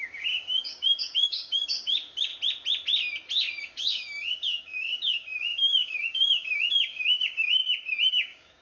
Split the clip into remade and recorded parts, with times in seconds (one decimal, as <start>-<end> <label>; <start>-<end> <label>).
0.0-2.3 remade; 2.3-3.6 recorded; 3.6-7.6 remade; 7.6-8.1 recorded; 8.1-8.6 remade